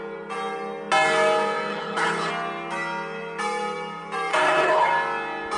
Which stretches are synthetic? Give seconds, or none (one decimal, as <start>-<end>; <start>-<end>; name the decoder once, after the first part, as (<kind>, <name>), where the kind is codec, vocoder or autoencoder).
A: 1.7-2.3 (codec, HILCodec); 4.3-4.9